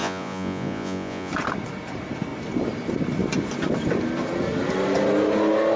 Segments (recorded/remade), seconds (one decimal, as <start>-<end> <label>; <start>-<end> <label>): 0.0-1.3 remade; 1.3-5.8 recorded